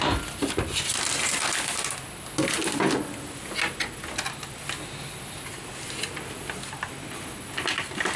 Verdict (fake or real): real